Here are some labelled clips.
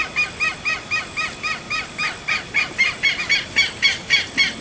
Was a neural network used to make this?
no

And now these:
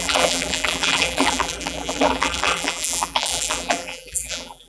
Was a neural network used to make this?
yes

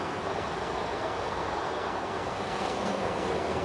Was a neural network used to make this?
yes